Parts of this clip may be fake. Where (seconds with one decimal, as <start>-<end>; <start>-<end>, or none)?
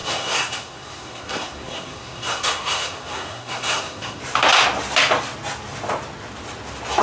0.0-4.2